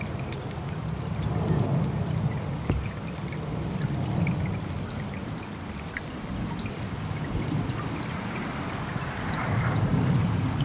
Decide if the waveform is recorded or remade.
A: recorded